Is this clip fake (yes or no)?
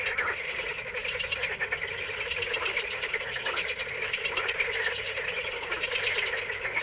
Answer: no